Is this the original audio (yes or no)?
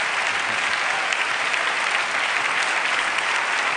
yes